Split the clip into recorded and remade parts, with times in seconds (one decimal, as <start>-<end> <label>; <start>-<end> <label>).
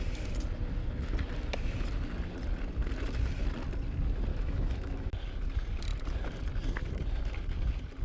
0.0-4.3 recorded; 4.3-5.1 remade; 5.1-8.0 recorded